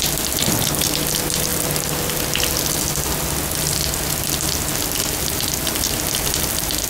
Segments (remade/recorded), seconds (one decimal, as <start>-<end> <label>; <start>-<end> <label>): 0.0-6.9 recorded